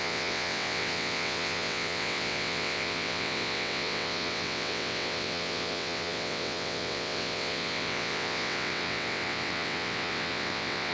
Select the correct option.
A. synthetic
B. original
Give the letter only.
A